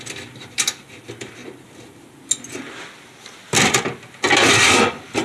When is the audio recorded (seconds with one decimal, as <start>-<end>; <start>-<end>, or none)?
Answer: 1.4-4.5